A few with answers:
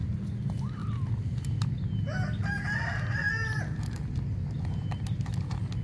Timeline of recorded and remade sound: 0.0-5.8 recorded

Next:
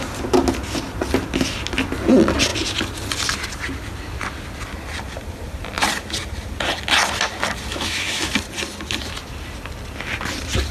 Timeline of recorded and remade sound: 0.0-7.7 recorded; 7.7-8.3 remade; 8.3-10.7 recorded